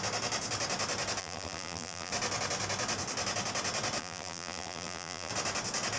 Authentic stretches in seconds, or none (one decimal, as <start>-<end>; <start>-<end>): 0.0-1.2; 2.1-4.0; 5.3-6.0